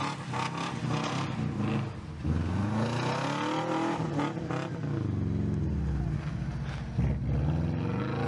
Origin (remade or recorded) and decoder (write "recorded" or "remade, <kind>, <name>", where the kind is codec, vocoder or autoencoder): recorded